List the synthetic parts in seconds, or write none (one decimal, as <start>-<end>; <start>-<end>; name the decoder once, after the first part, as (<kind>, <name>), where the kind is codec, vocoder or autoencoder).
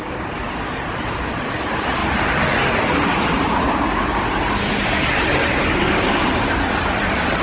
none